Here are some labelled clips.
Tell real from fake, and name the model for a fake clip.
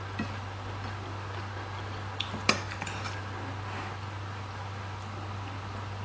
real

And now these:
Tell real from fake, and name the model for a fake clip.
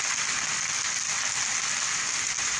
fake, vocoder, BigVGAN v2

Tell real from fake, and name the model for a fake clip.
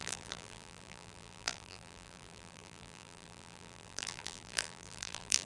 fake, vocoder, BigVGAN v2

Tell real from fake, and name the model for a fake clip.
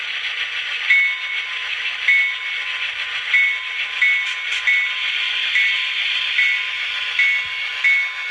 real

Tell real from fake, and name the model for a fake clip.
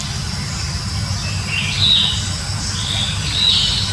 real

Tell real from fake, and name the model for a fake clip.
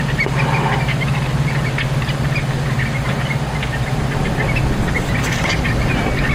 real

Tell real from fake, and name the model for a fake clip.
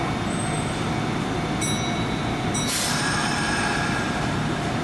real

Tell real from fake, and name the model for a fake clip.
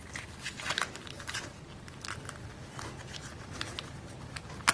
real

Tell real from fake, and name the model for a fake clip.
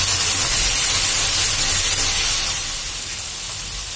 real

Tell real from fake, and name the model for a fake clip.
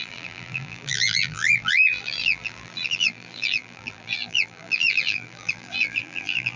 fake, vocoder, BigVGAN v2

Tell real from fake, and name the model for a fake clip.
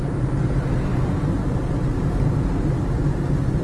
real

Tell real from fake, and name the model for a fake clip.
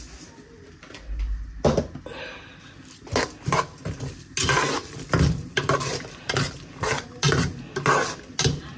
real